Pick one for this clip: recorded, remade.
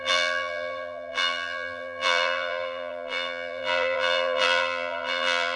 remade